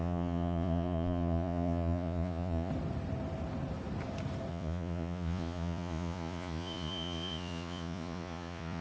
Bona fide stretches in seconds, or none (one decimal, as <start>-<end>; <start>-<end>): 2.7-4.5